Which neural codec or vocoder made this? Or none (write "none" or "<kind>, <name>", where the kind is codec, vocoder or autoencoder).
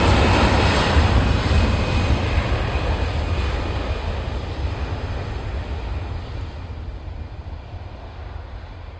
none